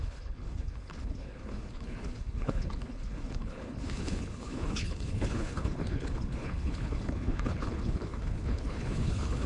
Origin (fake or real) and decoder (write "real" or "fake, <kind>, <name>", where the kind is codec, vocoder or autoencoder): fake, codec, HILCodec